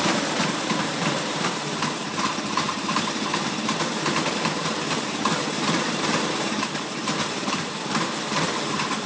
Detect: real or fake fake